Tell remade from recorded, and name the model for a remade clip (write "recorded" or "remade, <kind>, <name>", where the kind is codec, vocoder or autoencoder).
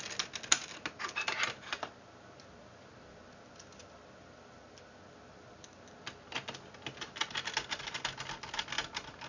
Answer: recorded